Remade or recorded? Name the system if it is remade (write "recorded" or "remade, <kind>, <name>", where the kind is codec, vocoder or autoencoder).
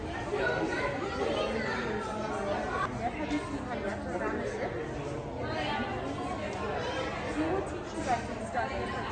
recorded